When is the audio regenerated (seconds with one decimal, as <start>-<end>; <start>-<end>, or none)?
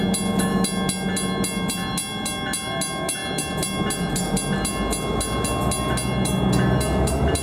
none